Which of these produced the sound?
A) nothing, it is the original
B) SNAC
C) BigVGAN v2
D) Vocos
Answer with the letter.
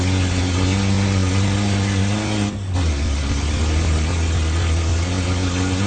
A